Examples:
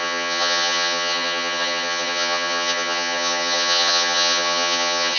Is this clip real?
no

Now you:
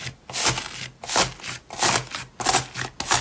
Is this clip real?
yes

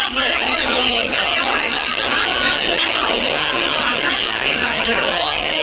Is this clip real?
no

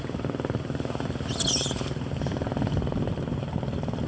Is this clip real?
yes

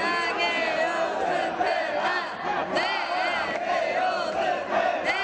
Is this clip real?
yes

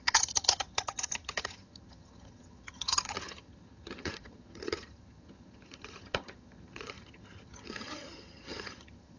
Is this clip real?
no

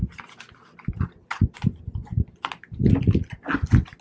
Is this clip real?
yes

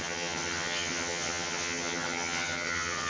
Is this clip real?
no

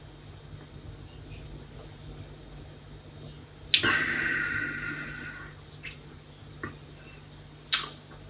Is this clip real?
yes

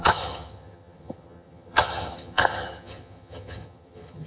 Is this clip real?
no